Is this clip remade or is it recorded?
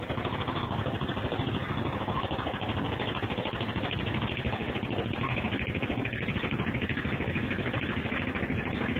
recorded